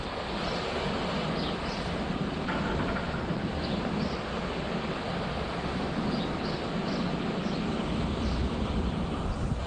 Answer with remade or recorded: recorded